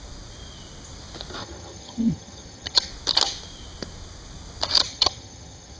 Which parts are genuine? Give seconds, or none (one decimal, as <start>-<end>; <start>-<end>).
0.0-1.4; 2.9-4.9